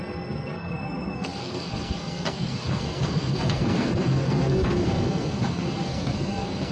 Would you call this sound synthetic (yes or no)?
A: yes